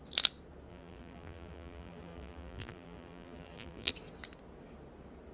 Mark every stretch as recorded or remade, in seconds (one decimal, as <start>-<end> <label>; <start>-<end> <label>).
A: 0.0-0.7 recorded; 0.7-3.9 remade; 3.9-5.3 recorded